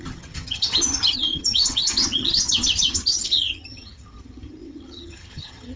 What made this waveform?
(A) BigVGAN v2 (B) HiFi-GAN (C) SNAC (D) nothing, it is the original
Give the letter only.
B